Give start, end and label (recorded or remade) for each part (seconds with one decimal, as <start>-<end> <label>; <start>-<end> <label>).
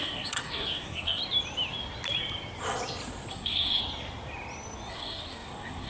0.0-1.2 remade; 1.2-3.3 recorded; 3.3-3.8 remade; 3.8-4.9 recorded; 4.9-5.9 remade